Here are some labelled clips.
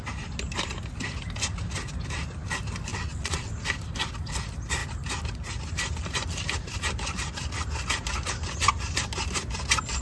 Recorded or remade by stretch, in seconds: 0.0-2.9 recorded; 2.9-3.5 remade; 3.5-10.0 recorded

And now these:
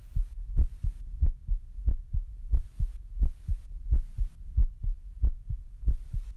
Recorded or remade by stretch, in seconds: 0.0-1.2 remade; 1.2-3.5 recorded; 3.5-4.3 remade; 4.3-6.4 recorded

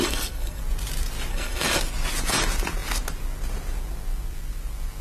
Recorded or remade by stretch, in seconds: 0.0-0.6 remade; 0.6-1.3 recorded; 1.3-1.8 remade; 1.8-5.0 recorded

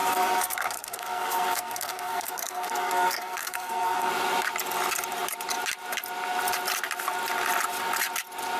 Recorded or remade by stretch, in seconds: 0.0-4.1 remade; 4.1-8.6 recorded

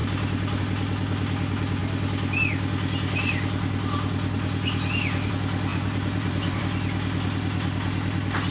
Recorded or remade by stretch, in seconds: 0.0-0.6 remade; 0.6-5.7 recorded; 5.7-6.6 remade; 6.6-8.5 recorded